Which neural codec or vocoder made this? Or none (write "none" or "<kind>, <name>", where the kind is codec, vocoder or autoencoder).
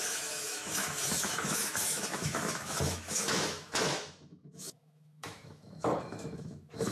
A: autoencoder, DAC-VAE